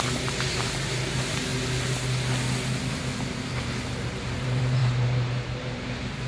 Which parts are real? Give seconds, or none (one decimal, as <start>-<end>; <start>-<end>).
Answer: 1.5-2.9